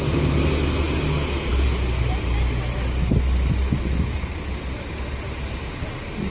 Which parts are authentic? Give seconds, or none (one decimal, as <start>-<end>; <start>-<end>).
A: 0.0-6.3

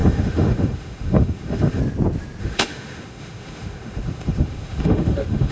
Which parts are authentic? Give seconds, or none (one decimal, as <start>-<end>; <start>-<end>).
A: 1.8-2.4

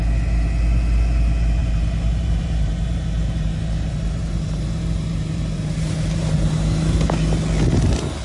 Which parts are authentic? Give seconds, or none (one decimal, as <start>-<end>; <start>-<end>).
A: 0.0-1.6; 6.5-8.2